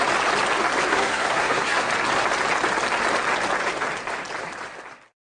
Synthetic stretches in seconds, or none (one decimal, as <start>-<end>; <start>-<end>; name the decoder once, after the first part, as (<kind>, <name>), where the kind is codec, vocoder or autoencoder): 0.9-1.9 (codec, SNAC)